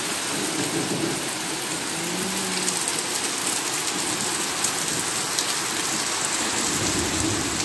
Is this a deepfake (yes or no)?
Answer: no